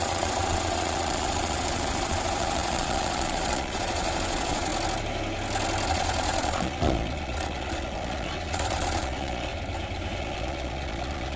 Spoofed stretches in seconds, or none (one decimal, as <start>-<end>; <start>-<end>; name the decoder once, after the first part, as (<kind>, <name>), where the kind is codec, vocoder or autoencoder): 0.0-4.7 (vocoder, Vocos); 5.9-9.5; 10.2-11.4